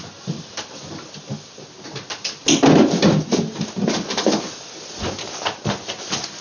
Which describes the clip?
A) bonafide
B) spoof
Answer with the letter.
A